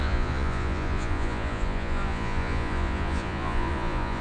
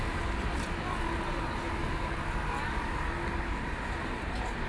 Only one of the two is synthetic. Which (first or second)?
first